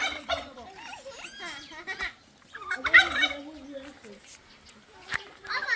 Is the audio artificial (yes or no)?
no